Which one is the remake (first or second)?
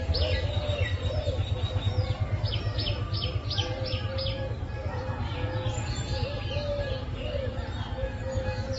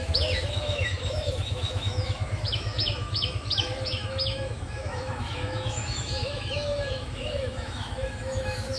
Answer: second